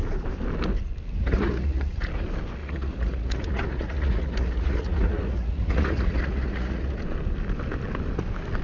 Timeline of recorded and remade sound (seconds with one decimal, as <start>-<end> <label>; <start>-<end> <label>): 0.0-1.2 recorded; 1.2-2.1 remade; 2.1-2.6 recorded; 2.6-7.0 remade; 7.0-8.6 recorded

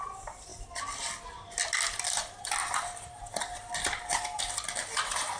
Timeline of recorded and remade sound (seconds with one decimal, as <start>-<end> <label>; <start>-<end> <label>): 0.0-5.4 recorded

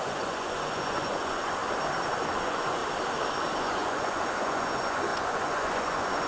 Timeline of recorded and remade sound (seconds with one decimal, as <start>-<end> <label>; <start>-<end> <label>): 0.0-1.6 remade; 1.6-2.4 recorded; 2.4-2.8 remade; 2.8-3.6 recorded; 3.6-6.3 remade

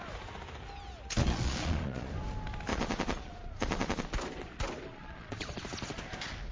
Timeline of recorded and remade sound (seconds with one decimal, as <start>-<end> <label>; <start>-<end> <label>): 0.0-1.2 recorded; 1.2-2.1 remade; 2.1-2.7 recorded; 2.7-4.0 remade; 4.0-4.9 recorded; 4.9-5.6 remade; 5.6-6.5 recorded

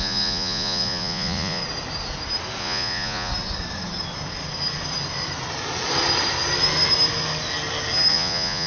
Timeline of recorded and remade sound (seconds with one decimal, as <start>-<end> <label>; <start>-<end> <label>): 0.0-1.6 remade; 1.6-2.6 recorded; 2.6-3.3 remade; 3.3-8.1 recorded; 8.1-8.7 remade

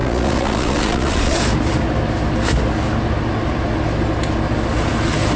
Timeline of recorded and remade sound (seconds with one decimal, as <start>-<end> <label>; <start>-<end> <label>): 0.0-1.4 remade; 1.4-5.4 recorded